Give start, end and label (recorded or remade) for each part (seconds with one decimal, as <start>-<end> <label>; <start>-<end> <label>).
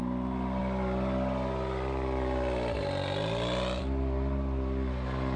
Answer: 0.0-5.4 recorded